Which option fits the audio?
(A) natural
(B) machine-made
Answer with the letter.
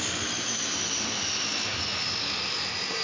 A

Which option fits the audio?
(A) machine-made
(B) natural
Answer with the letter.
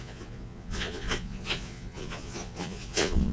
A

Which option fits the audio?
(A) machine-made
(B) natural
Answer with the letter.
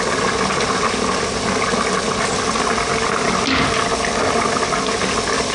B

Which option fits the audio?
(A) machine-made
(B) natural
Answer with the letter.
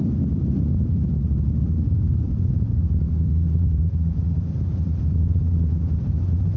A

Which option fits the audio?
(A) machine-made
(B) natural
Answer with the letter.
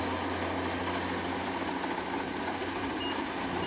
B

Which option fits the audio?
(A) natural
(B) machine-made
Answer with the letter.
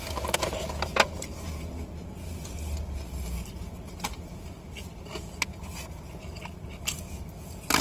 A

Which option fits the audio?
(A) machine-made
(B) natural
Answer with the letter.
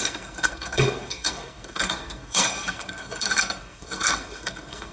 A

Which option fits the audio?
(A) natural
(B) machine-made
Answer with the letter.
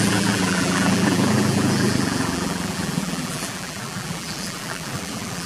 B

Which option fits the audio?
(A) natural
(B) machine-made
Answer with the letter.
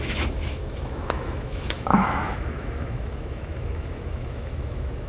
B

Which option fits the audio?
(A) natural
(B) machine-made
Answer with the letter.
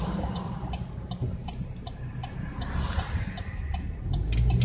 A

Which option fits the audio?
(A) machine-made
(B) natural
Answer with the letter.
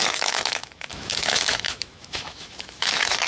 A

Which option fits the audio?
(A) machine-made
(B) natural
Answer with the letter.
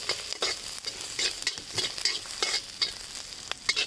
B